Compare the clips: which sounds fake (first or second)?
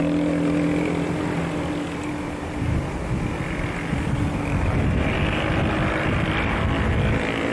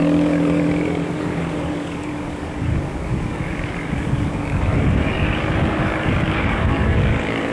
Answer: second